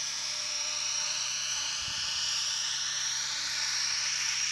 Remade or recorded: remade